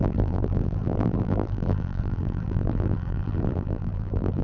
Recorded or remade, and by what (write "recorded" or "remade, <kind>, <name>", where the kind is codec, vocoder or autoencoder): remade, vocoder, BigVGAN v2